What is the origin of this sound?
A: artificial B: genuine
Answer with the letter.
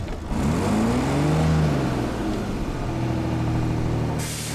B